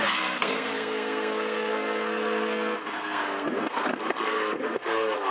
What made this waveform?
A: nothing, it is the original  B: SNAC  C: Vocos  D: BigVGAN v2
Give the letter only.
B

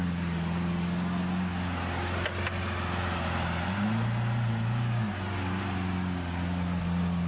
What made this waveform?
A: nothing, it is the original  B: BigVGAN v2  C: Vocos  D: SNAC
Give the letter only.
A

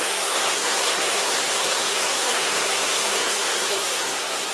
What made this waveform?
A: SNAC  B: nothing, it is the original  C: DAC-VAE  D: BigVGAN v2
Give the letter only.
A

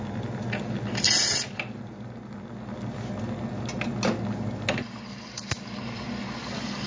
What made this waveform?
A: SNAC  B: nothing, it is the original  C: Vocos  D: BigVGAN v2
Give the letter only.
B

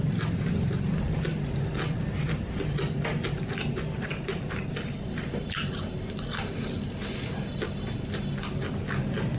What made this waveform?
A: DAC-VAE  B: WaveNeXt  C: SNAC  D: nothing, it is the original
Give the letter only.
D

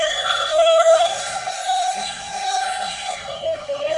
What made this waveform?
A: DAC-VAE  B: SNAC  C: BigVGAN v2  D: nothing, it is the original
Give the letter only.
B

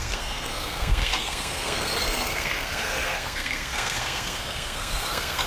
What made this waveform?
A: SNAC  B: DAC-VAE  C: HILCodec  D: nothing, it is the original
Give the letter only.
A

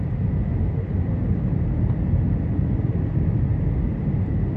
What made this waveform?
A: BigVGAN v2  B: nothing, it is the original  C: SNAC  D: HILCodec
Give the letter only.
B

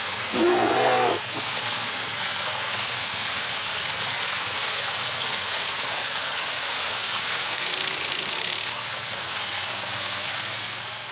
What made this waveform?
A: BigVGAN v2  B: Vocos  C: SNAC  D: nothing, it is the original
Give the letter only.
C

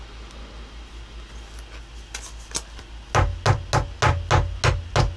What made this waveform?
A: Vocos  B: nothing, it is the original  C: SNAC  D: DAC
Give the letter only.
B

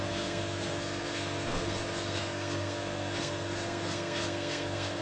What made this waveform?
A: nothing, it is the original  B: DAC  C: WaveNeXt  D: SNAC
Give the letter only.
D